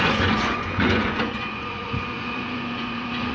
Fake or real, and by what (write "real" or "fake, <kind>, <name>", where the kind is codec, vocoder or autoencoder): fake, vocoder, Vocos